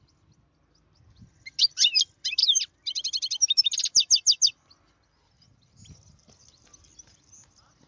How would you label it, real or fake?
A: real